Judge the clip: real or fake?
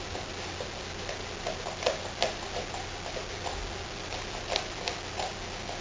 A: real